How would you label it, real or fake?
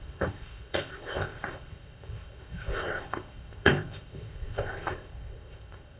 fake